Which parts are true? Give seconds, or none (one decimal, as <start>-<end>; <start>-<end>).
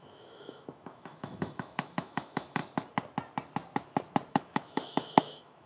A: 2.6-4.3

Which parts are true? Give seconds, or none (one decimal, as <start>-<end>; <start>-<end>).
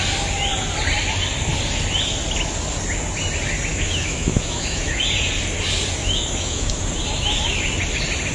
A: 0.0-3.7; 5.0-6.0; 6.8-8.3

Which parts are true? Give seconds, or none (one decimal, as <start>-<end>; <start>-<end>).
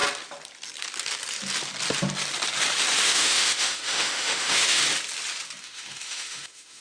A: 0.0-3.0; 4.8-5.6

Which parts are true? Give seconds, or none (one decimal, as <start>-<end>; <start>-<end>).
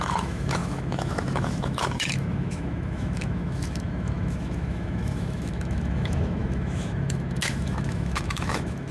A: none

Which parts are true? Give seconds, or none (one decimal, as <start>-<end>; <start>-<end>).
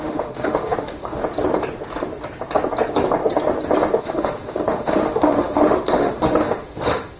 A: 1.2-4.0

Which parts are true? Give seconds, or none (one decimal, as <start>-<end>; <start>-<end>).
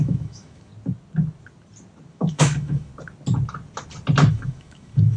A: 0.7-2.1; 2.9-4.3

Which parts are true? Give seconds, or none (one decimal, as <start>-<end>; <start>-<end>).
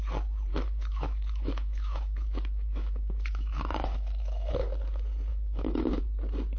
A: 0.0-0.5; 4.5-5.3; 6.0-6.6